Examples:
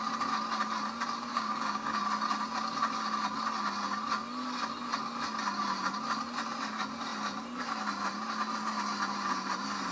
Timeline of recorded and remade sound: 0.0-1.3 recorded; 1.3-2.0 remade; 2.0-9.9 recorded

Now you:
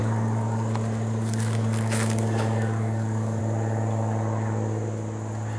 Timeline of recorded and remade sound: 0.0-3.4 remade; 3.4-5.6 recorded

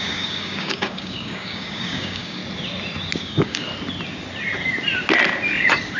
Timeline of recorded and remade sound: 0.0-2.4 remade; 2.4-3.2 recorded; 3.2-3.7 remade; 3.7-6.0 recorded

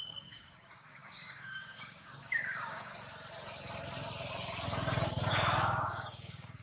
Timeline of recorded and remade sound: 0.0-2.9 remade; 2.9-5.3 recorded; 5.3-6.6 remade

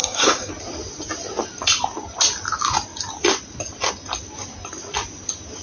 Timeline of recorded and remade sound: 0.0-0.5 remade; 0.5-5.6 recorded

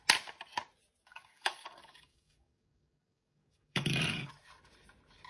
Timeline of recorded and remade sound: 0.0-1.1 recorded; 1.1-4.3 remade; 4.3-5.3 recorded

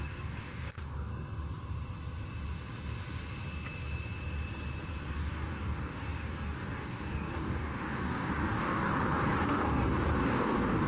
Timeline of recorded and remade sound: 0.0-1.1 remade; 1.1-5.1 recorded; 5.1-8.9 remade; 8.9-9.5 recorded; 9.5-10.9 remade